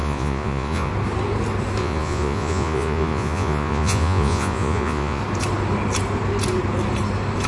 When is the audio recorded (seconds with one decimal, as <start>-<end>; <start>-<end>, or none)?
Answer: 0.9-1.8; 5.2-7.5